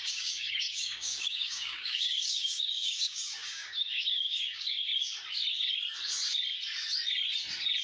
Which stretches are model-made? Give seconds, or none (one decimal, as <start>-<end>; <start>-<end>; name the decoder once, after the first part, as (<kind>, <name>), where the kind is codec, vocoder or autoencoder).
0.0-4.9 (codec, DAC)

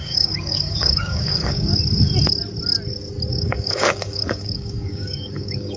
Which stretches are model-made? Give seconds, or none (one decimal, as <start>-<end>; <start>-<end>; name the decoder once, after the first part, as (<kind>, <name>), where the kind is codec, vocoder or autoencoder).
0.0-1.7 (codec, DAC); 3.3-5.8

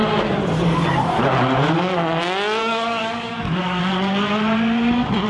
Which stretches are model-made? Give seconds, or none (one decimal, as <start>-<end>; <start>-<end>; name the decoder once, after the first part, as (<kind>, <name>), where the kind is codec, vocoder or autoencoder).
2.6-3.8 (codec, DAC)